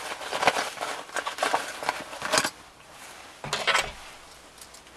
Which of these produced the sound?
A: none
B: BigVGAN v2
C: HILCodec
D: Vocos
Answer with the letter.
A